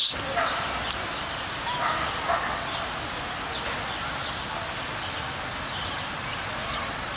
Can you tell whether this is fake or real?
real